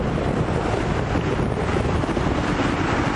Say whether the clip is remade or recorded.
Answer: recorded